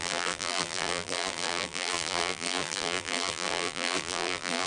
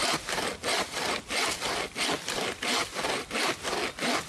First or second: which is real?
second